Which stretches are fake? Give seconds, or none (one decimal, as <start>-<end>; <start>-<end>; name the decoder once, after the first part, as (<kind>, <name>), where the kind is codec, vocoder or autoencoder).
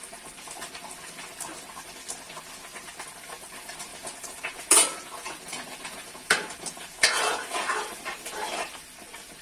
3.9-8.0 (vocoder, Vocos)